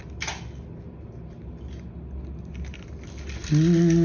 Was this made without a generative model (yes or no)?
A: yes